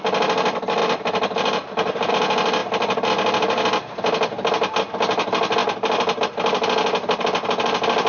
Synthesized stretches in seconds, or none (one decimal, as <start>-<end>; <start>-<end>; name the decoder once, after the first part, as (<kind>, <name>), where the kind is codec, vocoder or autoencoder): 0.8-2.1 (vocoder, BigVGAN v2); 2.6-3.1; 5.6-6.2